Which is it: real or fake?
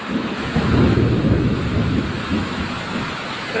fake